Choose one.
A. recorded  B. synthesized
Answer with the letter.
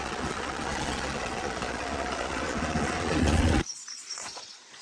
B